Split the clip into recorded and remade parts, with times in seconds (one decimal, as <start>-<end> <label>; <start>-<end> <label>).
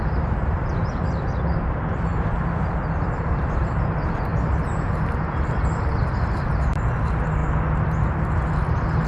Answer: 0.0-2.1 remade; 2.1-2.6 recorded; 2.6-7.4 remade; 7.4-9.1 recorded